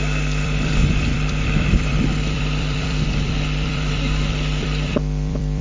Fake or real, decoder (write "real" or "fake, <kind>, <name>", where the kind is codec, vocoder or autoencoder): fake, vocoder, BigVGAN v2